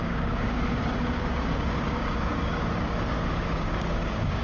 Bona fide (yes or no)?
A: no